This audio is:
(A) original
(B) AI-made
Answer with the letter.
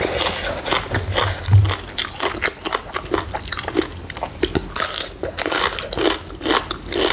A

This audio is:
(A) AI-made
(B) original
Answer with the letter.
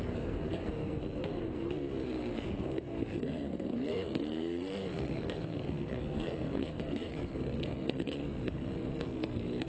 A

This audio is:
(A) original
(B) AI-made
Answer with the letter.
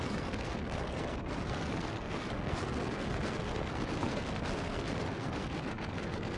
B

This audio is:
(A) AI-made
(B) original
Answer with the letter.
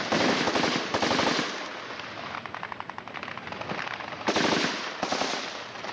B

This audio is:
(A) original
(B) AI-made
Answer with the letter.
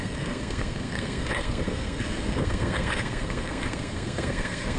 B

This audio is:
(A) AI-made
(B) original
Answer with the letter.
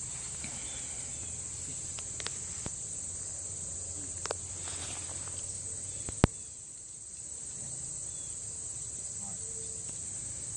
B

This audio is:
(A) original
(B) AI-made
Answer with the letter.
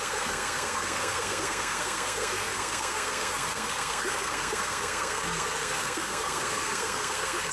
B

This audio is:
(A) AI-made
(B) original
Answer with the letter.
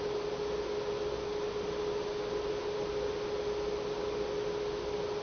B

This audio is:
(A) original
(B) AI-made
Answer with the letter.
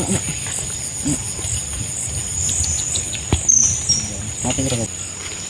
A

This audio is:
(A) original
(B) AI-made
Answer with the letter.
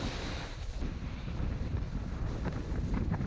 A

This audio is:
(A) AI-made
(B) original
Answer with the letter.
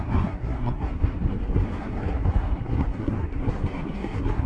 A